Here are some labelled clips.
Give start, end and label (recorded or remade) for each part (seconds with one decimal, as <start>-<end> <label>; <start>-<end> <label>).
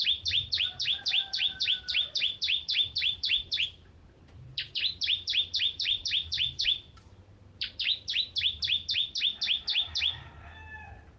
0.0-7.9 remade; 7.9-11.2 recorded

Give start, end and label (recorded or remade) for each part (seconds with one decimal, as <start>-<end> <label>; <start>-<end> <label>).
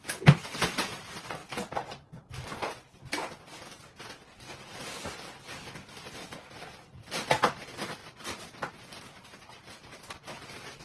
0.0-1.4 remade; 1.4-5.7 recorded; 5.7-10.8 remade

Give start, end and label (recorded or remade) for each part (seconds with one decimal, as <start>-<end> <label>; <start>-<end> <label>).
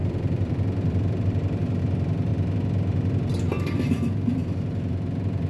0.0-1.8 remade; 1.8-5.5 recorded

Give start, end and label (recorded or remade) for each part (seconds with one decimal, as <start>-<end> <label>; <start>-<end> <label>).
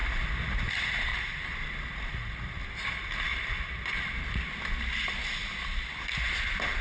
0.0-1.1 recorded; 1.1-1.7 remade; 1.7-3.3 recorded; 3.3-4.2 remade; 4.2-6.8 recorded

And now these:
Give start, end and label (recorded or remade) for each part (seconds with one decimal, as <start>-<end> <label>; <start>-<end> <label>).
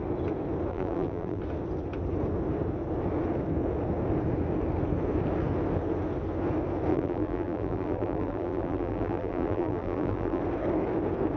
0.0-0.7 recorded; 0.7-1.4 remade; 1.4-6.9 recorded; 6.9-10.4 remade; 10.4-11.4 recorded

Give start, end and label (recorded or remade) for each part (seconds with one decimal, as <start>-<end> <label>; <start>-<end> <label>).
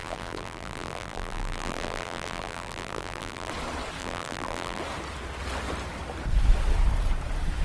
0.0-3.5 remade; 3.5-4.0 recorded; 4.0-4.8 remade; 4.8-7.6 recorded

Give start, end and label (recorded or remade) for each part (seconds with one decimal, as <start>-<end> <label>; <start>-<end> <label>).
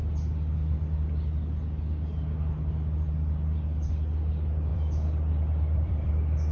0.0-4.7 recorded; 4.7-6.1 remade; 6.1-6.5 recorded